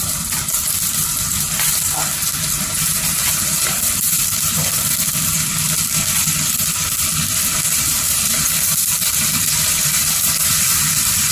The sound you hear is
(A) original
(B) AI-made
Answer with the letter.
B